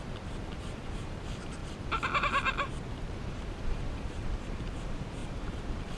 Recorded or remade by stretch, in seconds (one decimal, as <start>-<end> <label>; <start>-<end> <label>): 0.0-1.6 remade; 1.6-3.5 recorded; 3.5-6.0 remade